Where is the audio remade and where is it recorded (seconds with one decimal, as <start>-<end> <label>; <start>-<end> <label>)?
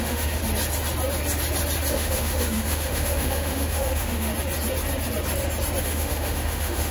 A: 0.0-0.4 remade; 0.4-1.9 recorded; 1.9-4.3 remade; 4.3-5.8 recorded; 5.8-6.9 remade